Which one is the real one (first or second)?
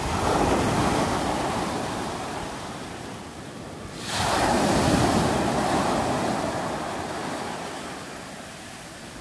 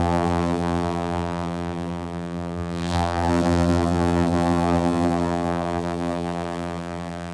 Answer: first